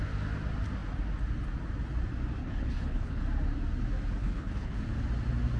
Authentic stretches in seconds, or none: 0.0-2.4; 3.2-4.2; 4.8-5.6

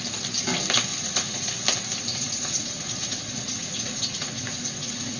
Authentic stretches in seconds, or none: 0.0-0.9; 1.5-2.1

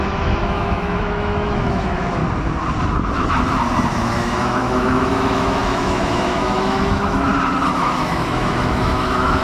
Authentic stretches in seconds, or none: 2.2-3.9; 7.3-7.8

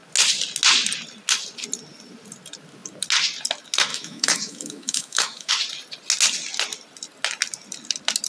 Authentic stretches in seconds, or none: 0.0-3.9; 5.5-8.3

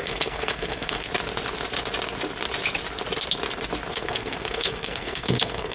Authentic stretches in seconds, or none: 1.1-3.9

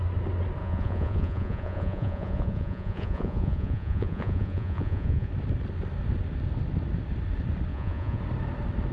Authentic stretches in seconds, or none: 0.0-0.6; 5.3-7.7; 8.2-8.9